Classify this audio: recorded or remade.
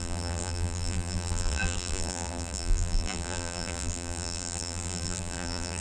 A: remade